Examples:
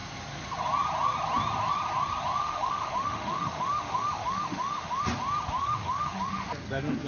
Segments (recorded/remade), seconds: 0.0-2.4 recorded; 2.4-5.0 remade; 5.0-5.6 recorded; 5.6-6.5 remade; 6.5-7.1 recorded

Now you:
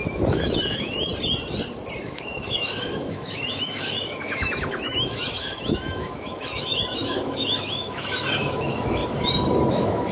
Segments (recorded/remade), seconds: 0.0-1.1 remade; 1.1-2.0 recorded; 2.0-9.0 remade; 9.0-9.7 recorded; 9.7-10.1 remade

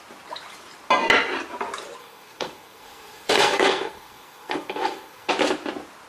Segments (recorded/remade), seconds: 0.0-2.0 recorded; 2.0-5.3 remade; 5.3-6.1 recorded

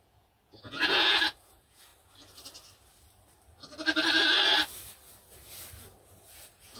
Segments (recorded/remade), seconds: 0.0-1.9 remade; 1.9-6.0 recorded; 6.0-6.8 remade

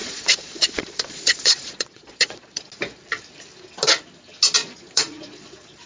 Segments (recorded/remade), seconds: 0.0-2.7 remade; 2.7-4.6 recorded; 4.6-5.9 remade

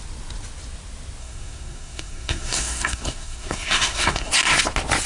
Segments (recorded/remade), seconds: 0.0-1.2 recorded; 1.2-4.3 remade; 4.3-5.1 recorded